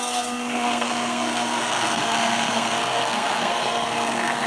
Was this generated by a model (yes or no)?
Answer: yes